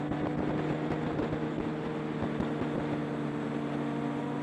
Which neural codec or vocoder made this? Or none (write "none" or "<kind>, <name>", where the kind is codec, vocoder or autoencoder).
none